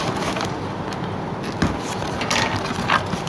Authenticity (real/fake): real